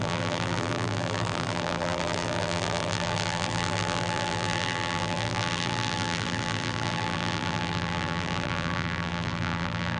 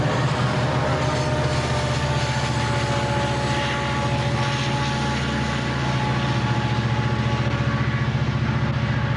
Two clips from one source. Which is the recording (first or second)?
second